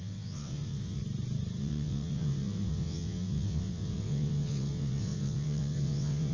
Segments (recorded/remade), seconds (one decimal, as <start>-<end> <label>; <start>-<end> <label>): 0.0-1.0 remade; 1.0-1.6 recorded; 1.6-6.3 remade